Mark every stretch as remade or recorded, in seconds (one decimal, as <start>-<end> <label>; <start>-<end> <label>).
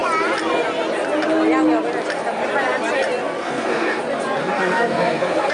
0.0-3.4 recorded; 3.4-4.0 remade; 4.0-4.4 recorded; 4.4-5.5 remade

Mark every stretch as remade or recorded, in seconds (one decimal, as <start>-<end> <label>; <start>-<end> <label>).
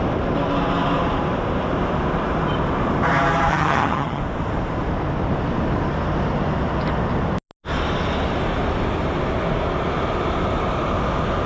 0.0-3.5 recorded; 3.5-4.2 remade; 4.2-11.5 recorded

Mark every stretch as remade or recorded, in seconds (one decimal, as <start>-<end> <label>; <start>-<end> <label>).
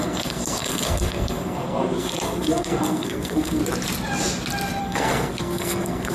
0.0-3.6 remade; 3.6-4.8 recorded; 4.8-6.1 remade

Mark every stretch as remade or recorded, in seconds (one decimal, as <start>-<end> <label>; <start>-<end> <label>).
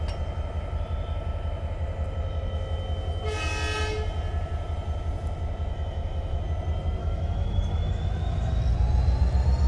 0.0-5.7 recorded; 5.7-6.4 remade; 6.4-7.0 recorded; 7.0-8.6 remade; 8.6-9.7 recorded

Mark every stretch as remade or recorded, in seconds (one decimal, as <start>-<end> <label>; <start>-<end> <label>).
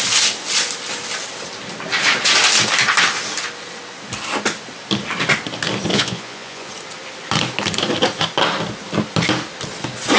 0.0-5.9 recorded; 5.9-6.7 remade; 6.7-10.2 recorded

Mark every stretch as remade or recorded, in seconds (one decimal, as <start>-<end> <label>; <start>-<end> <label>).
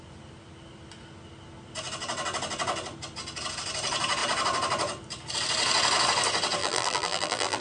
0.0-6.6 recorded; 6.6-7.6 remade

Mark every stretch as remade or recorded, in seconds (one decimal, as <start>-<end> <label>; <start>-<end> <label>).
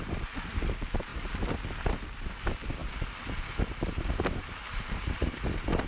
0.0-1.1 remade; 1.1-1.8 recorded; 1.8-2.8 remade; 2.8-3.9 recorded; 3.9-5.9 remade